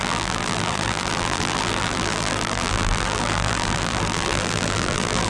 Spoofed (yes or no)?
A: yes